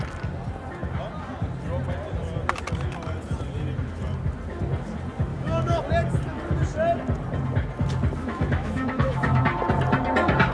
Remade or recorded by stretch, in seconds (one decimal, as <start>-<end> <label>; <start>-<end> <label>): 0.0-5.3 recorded; 5.3-5.8 remade; 5.8-8.2 recorded; 8.2-9.4 remade; 9.4-10.5 recorded